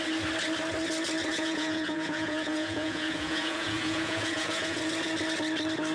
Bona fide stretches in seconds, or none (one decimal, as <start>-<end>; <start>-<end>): 0.0-1.3; 4.8-5.9